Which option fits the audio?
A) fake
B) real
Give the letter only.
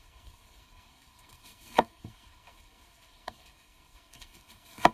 A